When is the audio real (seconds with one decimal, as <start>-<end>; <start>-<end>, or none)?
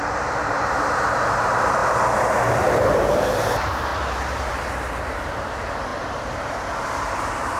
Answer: 1.8-2.5